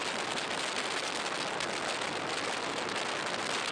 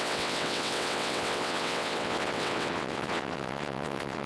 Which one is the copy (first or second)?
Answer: second